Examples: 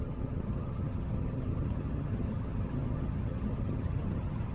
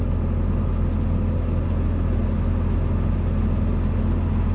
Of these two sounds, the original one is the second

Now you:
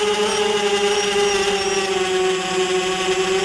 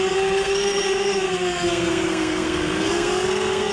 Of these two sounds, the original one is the first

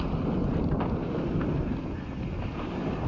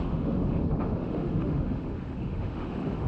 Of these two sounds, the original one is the first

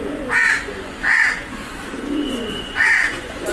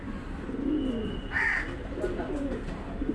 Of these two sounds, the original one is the second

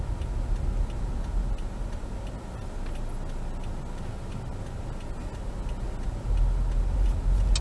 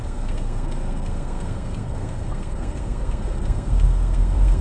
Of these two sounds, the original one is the first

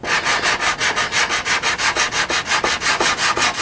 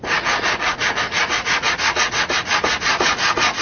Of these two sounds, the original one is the first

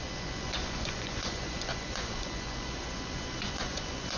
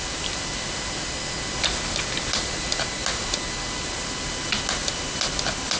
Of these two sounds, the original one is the second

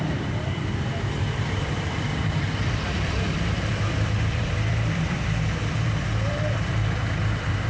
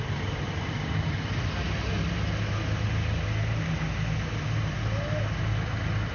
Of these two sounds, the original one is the second